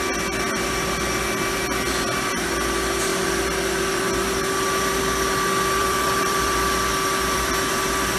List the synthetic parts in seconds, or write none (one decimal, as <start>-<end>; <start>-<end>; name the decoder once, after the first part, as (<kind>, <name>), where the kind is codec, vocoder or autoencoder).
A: 5.8-7.7 (vocoder, BigVGAN v2)